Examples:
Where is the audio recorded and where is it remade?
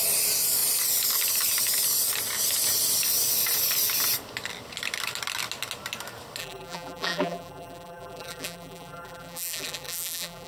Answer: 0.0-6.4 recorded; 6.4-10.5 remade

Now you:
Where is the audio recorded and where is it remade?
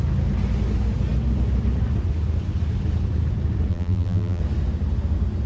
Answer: 0.0-3.7 recorded; 3.7-4.4 remade; 4.4-5.5 recorded